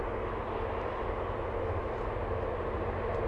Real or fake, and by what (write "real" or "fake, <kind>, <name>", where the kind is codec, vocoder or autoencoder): real